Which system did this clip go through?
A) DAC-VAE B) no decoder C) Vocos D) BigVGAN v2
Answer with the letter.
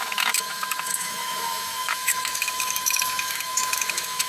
A